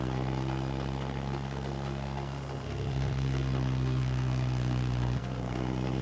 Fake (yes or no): yes